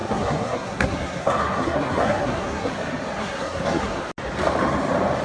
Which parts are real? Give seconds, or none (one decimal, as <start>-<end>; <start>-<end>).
2.7-3.2; 4.0-5.2